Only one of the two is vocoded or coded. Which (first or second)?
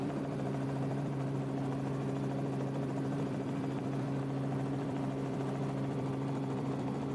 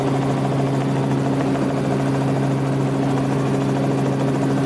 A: first